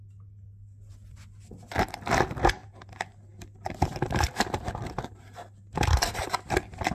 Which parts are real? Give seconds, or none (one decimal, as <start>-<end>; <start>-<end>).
0.0-6.9